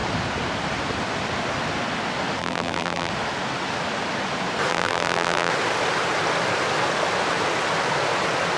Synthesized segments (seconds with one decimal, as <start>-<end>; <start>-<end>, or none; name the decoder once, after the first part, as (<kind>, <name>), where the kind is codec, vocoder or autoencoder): 2.4-3.1 (vocoder, BigVGAN v2); 4.7-5.5